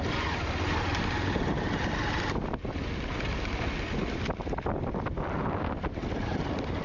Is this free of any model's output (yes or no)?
yes